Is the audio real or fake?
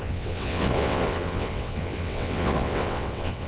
fake